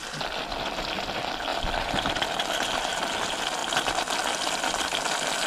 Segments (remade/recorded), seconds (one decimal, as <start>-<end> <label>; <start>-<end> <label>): 0.0-5.5 recorded